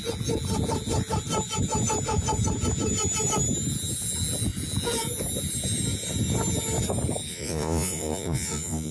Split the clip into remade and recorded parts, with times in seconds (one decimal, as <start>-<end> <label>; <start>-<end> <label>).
0.0-7.3 recorded; 7.3-8.9 remade